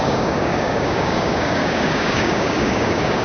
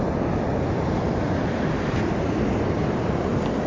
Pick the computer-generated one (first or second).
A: first